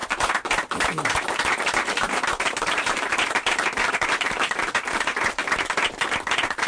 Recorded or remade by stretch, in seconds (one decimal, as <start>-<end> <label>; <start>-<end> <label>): 0.0-5.4 remade; 5.4-6.3 recorded; 6.3-6.7 remade